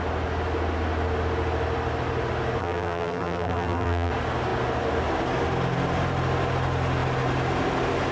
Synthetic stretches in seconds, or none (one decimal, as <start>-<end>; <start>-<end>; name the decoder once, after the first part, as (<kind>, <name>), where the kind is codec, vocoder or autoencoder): 2.6-4.1 (vocoder, BigVGAN v2)